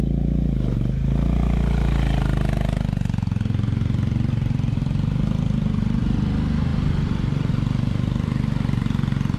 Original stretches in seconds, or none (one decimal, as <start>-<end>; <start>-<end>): 0.0-9.4